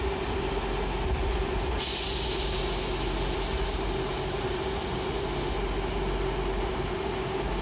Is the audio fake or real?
real